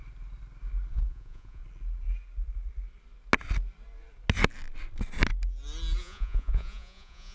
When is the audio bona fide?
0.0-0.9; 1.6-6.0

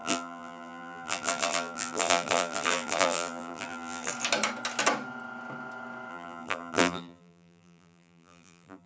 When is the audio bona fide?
4.1-6.1

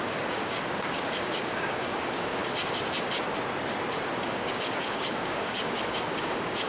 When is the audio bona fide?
2.4-4.3

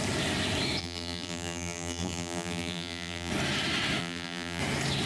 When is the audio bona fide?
0.0-0.8; 3.3-4.0; 4.6-5.1

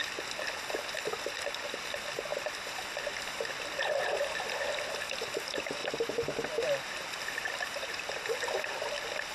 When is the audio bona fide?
1.3-2.3; 4.9-5.8

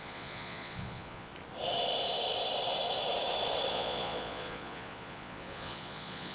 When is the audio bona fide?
1.3-3.7

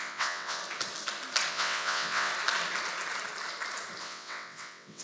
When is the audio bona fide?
0.6-1.5; 2.3-4.0

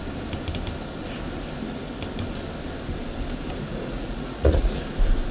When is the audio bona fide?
0.0-3.7; 4.8-5.3